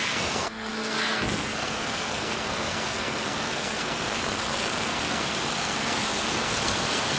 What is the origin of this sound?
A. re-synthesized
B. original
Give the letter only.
A